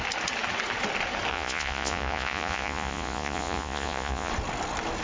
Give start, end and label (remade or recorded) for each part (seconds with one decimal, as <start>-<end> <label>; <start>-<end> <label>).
0.0-1.3 recorded; 1.3-4.3 remade; 4.3-5.0 recorded